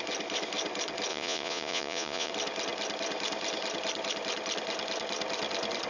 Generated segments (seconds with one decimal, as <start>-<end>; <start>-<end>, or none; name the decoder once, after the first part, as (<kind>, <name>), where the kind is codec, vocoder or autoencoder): 1.1-2.3 (vocoder, Vocos)